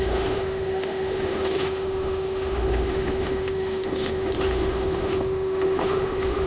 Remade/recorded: remade